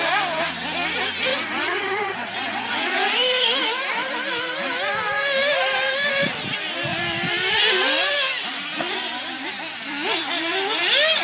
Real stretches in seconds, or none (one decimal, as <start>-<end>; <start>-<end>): 0.0-1.3; 3.1-11.2